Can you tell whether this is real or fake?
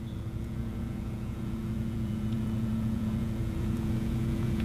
fake